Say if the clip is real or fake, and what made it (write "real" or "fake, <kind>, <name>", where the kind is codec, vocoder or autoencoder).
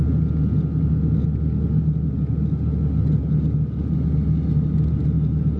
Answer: real